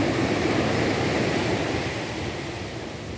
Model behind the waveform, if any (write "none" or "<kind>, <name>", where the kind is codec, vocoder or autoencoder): none